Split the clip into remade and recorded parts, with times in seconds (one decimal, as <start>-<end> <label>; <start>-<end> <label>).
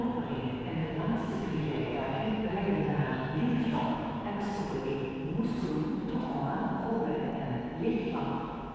0.0-0.8 recorded; 0.8-4.5 remade; 4.5-6.0 recorded; 6.0-8.7 remade